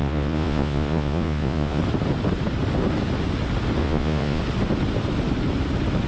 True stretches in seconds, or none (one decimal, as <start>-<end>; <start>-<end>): 1.8-3.8; 4.4-6.1